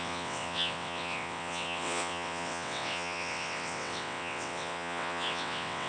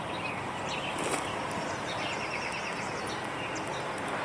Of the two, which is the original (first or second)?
second